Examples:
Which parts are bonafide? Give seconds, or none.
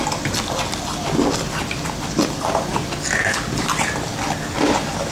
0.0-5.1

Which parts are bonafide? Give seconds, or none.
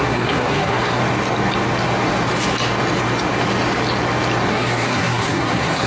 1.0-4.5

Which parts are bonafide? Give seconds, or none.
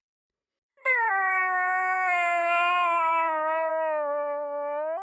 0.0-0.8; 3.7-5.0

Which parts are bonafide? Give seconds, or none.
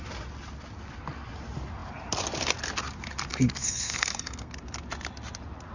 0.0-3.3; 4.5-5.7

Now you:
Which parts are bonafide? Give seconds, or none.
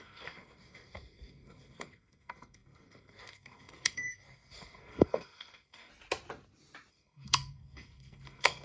5.9-6.9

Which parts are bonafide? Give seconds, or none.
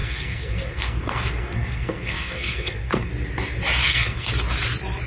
3.1-3.8; 4.3-5.1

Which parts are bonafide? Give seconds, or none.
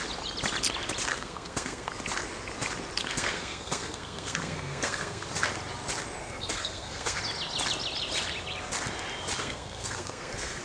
0.0-1.1; 1.9-3.0; 5.2-6.2; 7.2-9.4